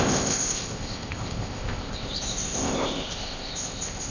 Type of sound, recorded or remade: remade